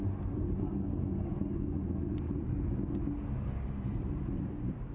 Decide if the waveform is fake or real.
real